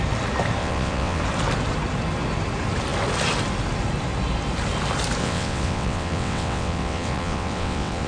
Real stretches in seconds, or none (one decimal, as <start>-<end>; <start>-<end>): 0.0-0.6; 1.2-5.2